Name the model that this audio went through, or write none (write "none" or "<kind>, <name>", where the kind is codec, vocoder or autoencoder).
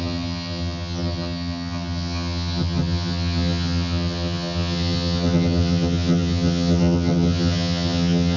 vocoder, HiFi-GAN